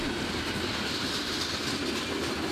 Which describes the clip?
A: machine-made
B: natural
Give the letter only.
B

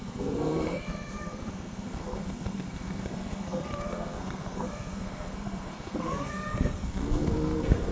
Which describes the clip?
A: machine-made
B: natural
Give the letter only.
A